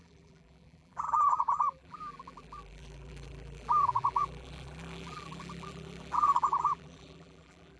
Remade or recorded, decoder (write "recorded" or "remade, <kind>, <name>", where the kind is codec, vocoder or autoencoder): remade, vocoder, BigVGAN v2